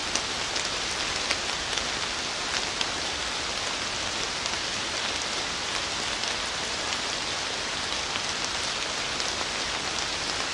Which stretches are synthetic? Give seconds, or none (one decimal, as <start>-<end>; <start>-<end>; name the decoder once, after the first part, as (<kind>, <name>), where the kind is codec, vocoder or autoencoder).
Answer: none